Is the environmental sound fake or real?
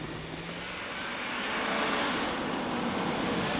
real